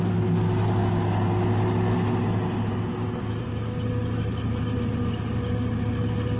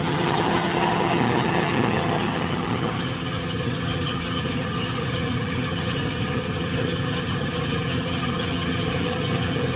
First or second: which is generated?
second